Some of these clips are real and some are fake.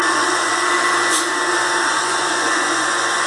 fake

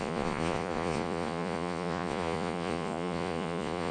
fake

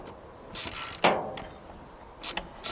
real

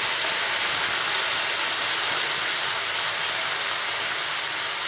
real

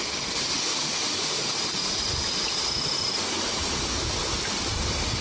real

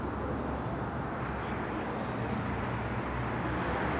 real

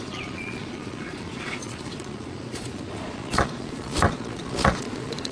fake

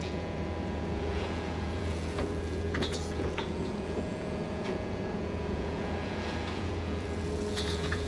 fake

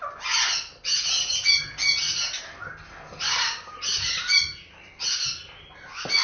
real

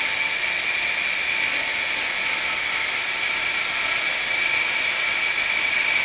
real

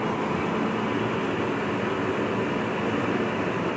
real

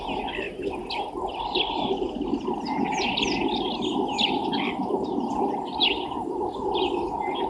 real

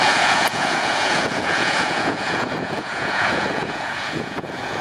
fake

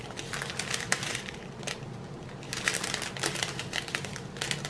real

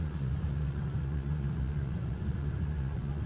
fake